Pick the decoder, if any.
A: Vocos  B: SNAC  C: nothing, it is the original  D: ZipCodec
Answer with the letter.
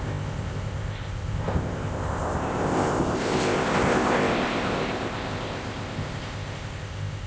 D